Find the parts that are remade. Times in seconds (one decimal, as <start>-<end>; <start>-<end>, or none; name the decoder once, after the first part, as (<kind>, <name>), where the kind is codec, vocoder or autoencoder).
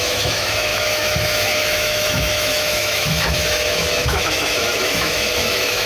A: 0.0-5.9 (autoencoder, DAC-VAE)